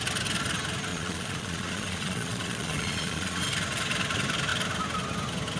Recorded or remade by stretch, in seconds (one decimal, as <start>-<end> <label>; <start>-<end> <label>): 0.0-0.9 recorded; 0.9-3.4 remade; 3.4-5.6 recorded